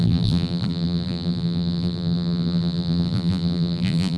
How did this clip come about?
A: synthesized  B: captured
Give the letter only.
A